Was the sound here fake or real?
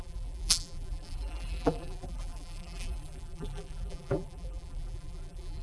fake